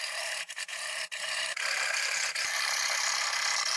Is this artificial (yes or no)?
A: yes